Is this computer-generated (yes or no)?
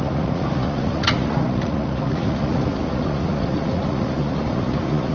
yes